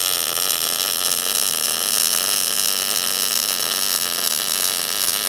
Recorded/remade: recorded